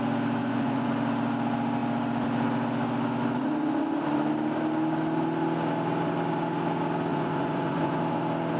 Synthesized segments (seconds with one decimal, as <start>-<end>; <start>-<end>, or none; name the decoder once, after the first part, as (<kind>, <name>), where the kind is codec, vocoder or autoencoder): 0.4-0.9 (vocoder, Vocos); 7.1-8.0